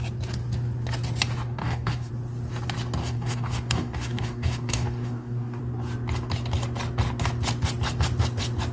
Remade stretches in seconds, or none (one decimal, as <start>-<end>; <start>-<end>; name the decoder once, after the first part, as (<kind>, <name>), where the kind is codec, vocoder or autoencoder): 1.6-2.1 (codec, DAC); 3.0-5.6